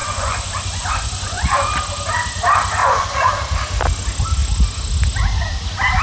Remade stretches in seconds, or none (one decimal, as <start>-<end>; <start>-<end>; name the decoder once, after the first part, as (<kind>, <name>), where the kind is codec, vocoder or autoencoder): 0.0-1.7 (vocoder, Vocos); 2.8-3.3